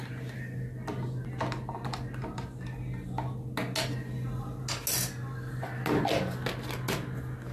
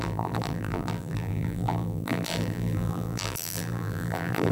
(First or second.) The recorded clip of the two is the first